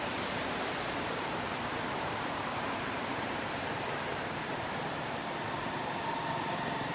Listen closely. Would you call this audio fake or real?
fake